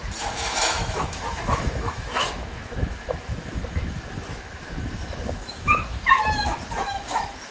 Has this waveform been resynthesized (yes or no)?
yes